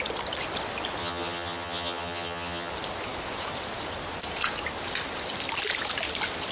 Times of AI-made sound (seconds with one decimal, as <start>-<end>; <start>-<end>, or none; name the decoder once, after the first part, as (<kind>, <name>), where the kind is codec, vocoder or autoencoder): 1.0-2.7 (vocoder, HiFi-GAN)